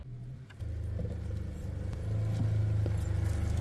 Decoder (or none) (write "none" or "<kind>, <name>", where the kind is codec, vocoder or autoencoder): none